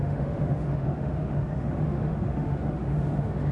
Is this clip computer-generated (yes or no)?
yes